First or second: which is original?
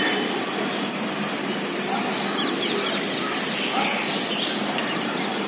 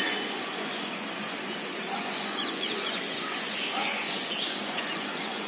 first